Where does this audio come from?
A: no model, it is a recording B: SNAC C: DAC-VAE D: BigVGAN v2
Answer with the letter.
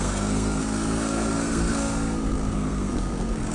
B